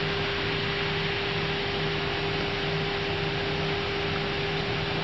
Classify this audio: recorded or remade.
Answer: recorded